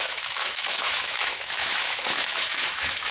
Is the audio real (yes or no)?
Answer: no